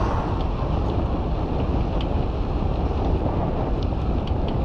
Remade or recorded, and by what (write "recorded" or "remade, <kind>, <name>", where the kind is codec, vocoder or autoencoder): recorded